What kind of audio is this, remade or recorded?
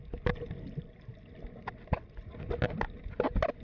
recorded